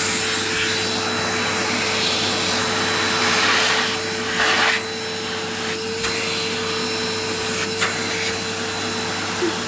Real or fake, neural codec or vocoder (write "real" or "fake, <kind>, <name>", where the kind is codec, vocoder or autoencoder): real